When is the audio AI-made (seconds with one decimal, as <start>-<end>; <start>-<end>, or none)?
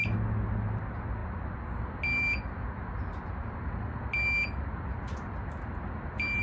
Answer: none